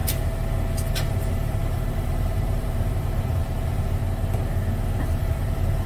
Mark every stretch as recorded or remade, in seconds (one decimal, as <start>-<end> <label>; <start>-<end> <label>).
0.0-0.9 recorded; 0.9-4.0 remade; 4.0-5.0 recorded; 5.0-5.9 remade